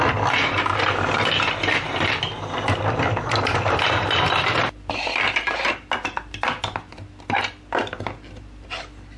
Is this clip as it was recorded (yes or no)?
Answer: yes